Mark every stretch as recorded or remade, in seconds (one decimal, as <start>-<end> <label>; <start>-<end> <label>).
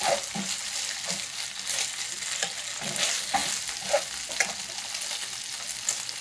0.0-6.2 recorded